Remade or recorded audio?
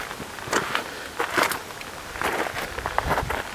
recorded